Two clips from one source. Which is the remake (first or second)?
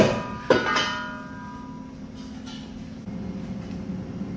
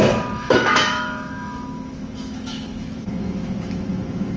second